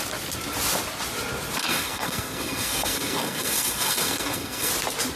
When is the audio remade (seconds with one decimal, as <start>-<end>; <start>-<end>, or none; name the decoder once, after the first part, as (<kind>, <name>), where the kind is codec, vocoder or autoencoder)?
1.6-4.7 (codec, SNAC)